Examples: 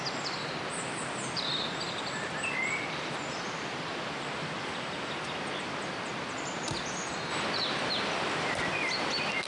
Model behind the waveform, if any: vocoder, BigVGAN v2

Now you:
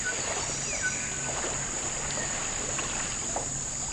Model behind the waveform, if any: none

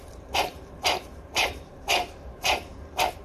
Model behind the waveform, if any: vocoder, BigVGAN v2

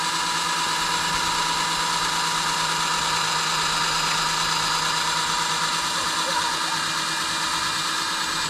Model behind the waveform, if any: none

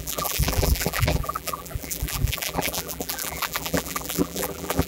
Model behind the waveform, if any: vocoder, BigVGAN v2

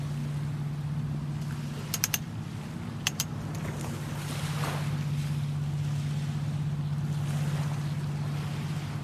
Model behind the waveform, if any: none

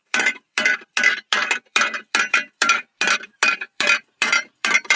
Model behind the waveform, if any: vocoder, BigVGAN v2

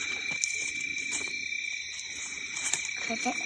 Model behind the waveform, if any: vocoder, BigVGAN v2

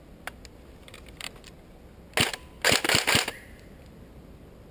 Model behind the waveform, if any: none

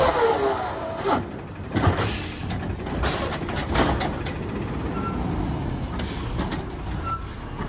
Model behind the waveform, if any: none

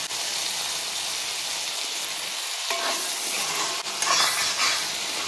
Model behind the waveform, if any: none